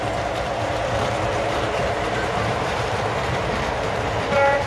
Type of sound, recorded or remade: remade